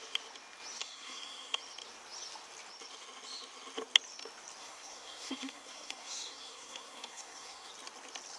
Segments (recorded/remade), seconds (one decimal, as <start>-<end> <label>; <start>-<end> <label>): 0.0-0.8 recorded; 0.8-1.6 remade; 1.6-4.6 recorded; 4.6-7.7 remade; 7.7-8.4 recorded